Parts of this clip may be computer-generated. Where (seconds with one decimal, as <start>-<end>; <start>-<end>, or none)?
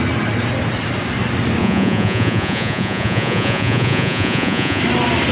1.6-4.8